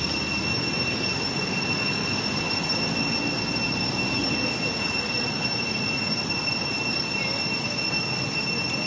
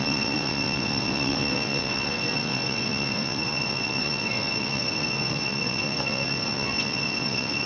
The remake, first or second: second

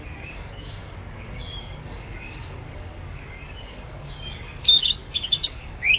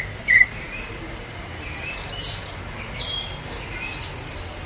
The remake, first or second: first